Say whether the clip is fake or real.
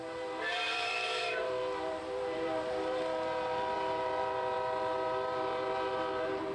fake